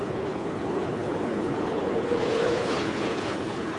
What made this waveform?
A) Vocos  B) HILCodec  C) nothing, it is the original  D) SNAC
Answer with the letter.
B